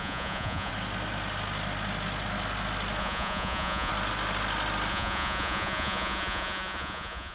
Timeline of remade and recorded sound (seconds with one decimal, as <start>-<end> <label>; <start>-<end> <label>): 0.0-0.7 remade; 0.7-3.0 recorded; 3.0-3.9 remade; 3.9-4.9 recorded; 4.9-7.3 remade